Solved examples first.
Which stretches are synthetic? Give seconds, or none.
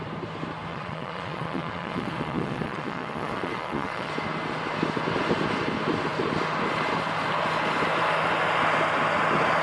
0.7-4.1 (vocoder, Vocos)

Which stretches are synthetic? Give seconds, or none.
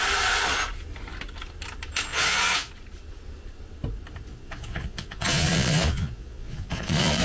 2.1-2.7 (vocoder, Vocos); 4.3-7.2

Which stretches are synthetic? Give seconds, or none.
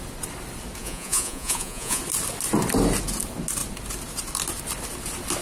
0.8-2.0 (vocoder, Vocos)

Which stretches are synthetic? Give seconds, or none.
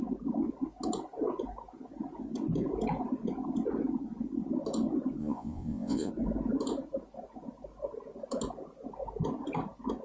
5.2-6.1 (vocoder, Vocos)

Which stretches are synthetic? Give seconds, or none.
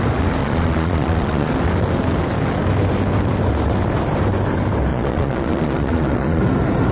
0.4-1.5 (vocoder, Vocos); 4.9-6.4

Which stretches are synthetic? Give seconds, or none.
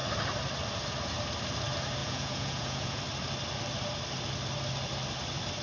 2.0-3.0 (vocoder, Vocos)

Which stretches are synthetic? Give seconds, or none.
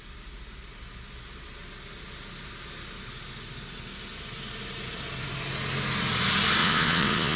6.6-7.4 (vocoder, Vocos)